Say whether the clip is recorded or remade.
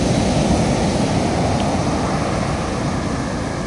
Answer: recorded